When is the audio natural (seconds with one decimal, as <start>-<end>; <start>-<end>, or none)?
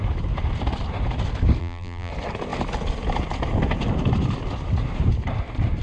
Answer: 0.0-1.6; 2.1-5.8